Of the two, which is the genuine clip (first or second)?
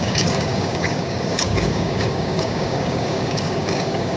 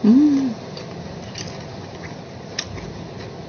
second